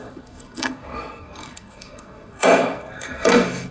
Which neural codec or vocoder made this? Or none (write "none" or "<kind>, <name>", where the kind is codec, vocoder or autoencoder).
codec, SNAC